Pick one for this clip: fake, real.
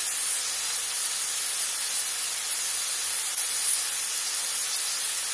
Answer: real